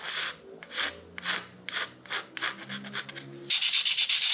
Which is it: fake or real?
real